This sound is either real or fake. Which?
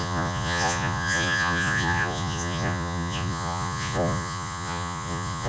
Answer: fake